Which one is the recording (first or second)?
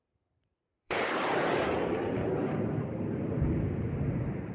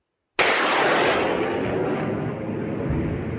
second